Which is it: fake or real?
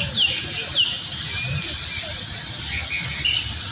real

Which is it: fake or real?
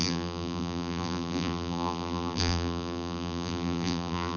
fake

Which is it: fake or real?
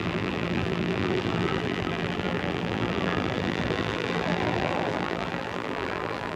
fake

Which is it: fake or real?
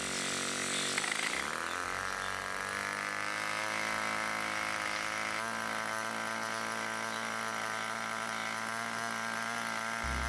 real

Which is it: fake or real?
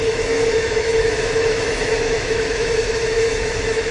fake